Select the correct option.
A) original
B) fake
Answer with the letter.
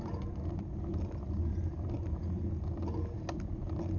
A